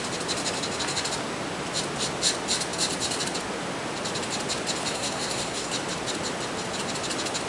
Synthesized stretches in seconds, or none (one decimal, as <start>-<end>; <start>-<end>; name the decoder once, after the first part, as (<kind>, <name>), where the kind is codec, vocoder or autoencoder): 4.9-5.7 (codec, SNAC)